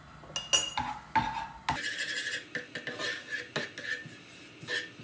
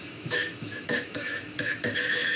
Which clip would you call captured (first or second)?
first